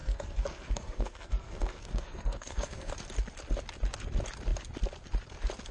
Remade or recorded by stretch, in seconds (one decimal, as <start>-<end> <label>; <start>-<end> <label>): 0.0-2.9 remade; 2.9-5.7 recorded